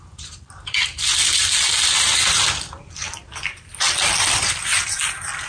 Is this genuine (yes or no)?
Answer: yes